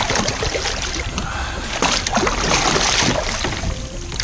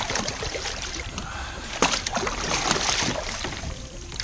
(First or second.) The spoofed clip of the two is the second